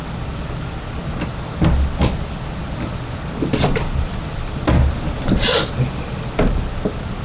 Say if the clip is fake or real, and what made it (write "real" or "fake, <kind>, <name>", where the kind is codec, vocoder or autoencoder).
real